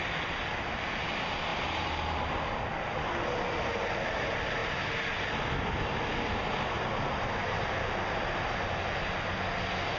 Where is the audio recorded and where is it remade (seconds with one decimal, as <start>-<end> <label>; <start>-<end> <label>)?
0.0-10.0 recorded